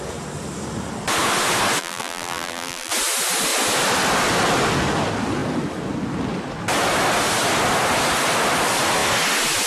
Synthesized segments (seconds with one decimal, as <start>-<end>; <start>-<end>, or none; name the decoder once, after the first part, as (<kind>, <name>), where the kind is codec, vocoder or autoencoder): 1.8-2.9 (vocoder, BigVGAN v2)